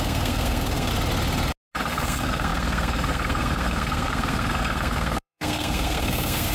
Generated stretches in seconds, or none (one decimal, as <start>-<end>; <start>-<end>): 0.0-0.9; 1.9-6.5